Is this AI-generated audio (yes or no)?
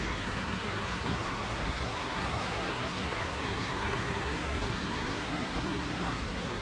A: yes